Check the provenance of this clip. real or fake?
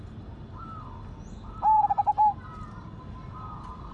real